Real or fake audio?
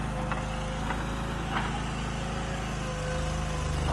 real